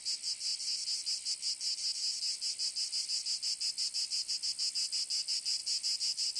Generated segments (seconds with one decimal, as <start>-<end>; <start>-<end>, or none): none